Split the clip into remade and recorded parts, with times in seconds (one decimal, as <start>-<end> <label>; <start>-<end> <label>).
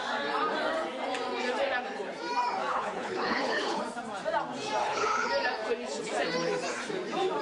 0.0-2.7 recorded; 2.7-3.8 remade; 3.8-4.8 recorded; 4.8-5.3 remade; 5.3-7.4 recorded